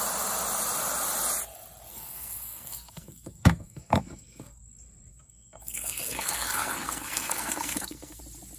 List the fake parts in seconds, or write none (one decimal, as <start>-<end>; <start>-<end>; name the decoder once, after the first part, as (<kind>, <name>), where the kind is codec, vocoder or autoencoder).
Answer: 1.9-4.6 (codec, SNAC); 5.1-8.2